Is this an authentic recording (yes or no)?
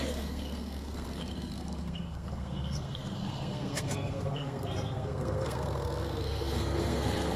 no